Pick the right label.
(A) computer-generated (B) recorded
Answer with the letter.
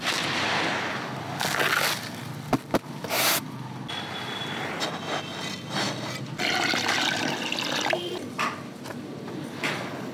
B